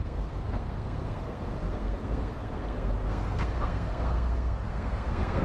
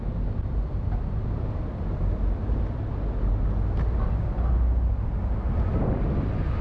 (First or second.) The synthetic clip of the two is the first